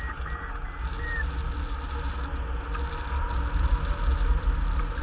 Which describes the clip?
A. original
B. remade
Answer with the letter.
A